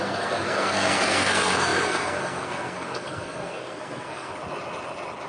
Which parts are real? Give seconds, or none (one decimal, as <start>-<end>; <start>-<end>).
4.3-5.3